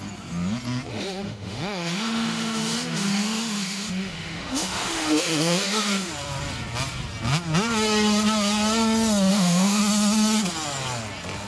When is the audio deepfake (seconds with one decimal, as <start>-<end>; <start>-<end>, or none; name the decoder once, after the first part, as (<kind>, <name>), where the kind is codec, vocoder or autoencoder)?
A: 0.9-6.1 (autoencoder, DAC-VAE); 9.3-9.8